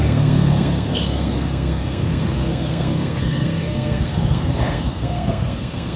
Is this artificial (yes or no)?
yes